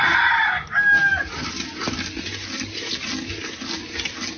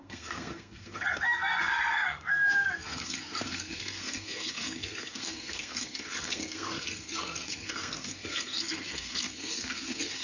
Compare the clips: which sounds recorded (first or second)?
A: first